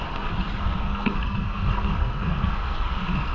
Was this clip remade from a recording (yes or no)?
yes